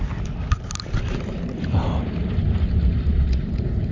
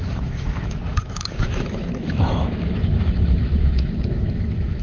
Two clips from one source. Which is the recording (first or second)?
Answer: first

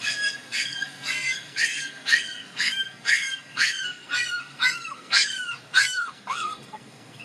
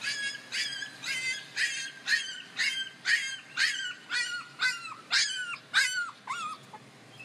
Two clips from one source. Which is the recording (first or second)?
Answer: second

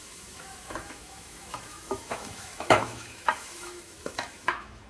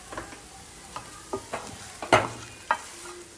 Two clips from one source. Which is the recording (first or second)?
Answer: second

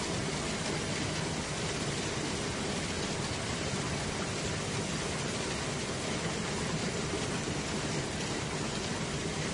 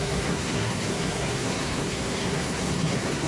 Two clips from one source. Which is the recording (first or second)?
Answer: first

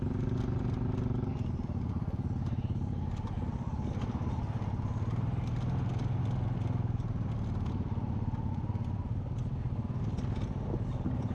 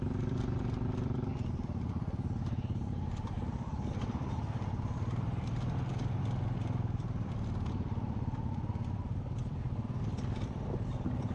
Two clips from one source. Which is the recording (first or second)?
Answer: first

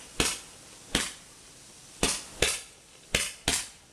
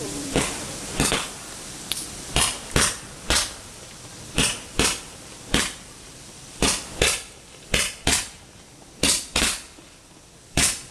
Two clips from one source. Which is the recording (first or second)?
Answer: first